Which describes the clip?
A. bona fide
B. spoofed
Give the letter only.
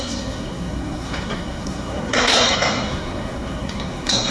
B